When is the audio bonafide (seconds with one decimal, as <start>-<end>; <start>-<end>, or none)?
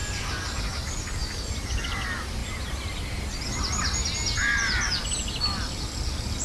0.0-6.4